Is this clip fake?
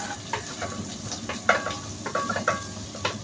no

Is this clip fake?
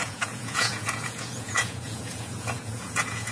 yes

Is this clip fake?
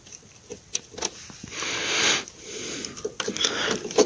no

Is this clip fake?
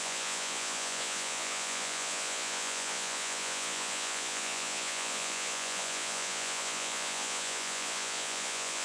yes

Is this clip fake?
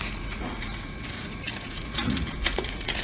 yes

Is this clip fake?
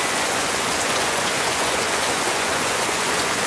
yes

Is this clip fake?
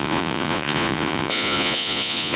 yes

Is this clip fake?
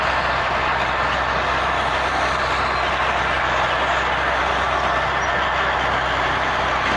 no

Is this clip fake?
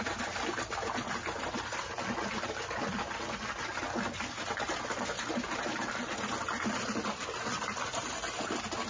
no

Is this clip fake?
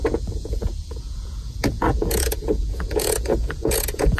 yes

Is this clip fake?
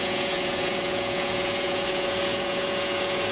yes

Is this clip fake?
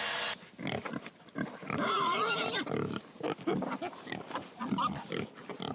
no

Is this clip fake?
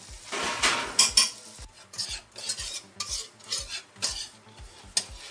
no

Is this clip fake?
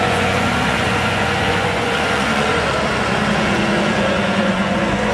yes